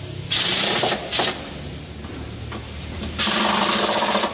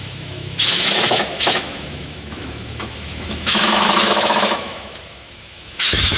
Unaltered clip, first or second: first